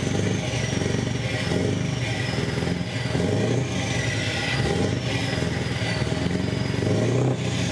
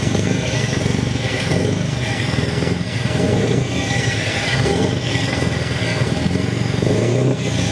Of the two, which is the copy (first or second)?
second